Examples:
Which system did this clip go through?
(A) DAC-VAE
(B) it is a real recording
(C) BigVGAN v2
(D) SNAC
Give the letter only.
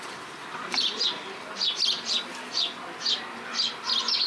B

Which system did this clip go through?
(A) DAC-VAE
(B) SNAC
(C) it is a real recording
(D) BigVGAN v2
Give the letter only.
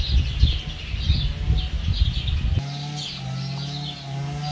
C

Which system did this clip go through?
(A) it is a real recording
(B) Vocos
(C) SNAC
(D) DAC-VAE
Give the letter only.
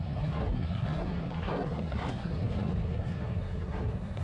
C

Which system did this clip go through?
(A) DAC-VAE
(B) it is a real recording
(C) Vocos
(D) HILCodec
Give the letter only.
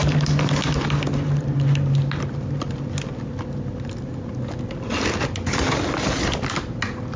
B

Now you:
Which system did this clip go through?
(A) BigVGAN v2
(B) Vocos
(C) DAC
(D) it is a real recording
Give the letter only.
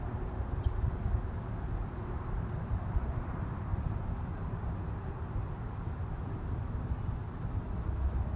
D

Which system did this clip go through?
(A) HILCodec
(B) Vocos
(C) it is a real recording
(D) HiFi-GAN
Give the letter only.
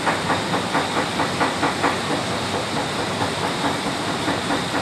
C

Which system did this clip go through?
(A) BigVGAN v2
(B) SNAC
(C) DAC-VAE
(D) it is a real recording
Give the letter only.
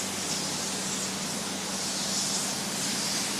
D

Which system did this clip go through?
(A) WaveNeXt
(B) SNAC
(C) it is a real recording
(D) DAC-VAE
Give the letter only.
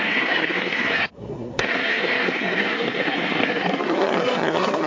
B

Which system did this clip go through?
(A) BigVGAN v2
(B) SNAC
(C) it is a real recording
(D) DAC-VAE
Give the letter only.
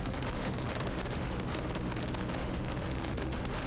D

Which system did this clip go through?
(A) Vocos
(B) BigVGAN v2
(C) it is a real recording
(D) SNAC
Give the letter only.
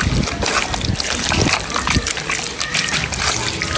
C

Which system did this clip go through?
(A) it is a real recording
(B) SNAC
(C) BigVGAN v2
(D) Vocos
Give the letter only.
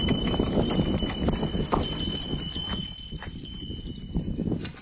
A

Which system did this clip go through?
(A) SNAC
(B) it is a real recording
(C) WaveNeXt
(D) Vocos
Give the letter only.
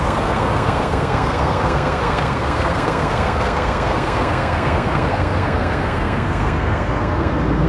A